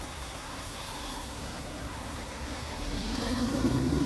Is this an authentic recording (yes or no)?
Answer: no